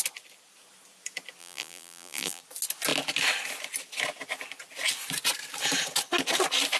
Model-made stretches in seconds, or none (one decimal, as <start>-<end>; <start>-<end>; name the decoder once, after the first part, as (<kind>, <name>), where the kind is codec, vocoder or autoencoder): 1.4-2.4 (vocoder, BigVGAN v2)